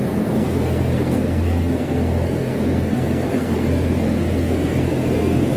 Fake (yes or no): yes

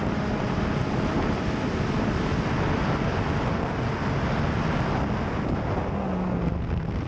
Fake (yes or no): no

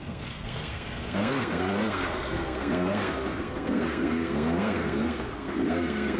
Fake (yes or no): yes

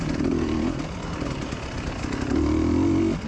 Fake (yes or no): no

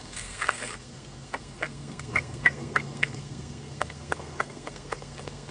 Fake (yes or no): yes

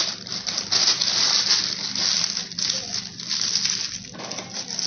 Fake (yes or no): no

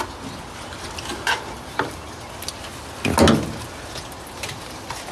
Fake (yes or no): no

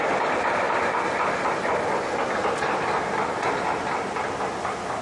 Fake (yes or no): no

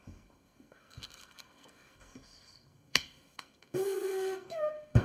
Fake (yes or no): yes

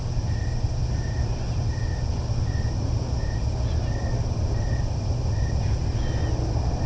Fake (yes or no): no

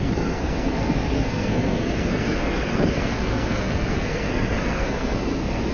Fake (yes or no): yes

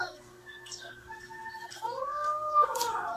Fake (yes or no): yes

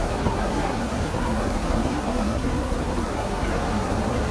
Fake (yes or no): yes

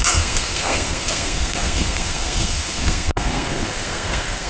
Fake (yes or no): yes